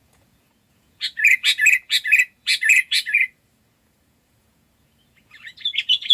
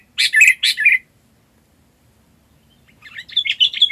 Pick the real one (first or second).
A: second